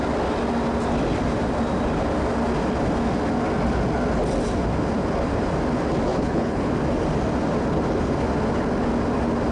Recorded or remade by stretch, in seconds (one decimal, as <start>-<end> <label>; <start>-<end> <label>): 0.0-6.1 recorded; 6.1-6.7 remade; 6.7-9.5 recorded